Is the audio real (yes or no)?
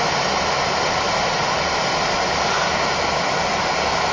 yes